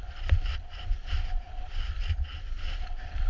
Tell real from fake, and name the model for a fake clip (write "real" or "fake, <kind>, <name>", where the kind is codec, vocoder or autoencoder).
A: real